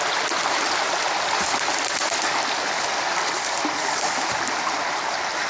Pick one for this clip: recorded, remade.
recorded